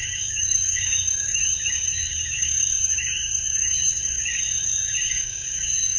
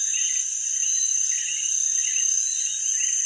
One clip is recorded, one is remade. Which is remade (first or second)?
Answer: first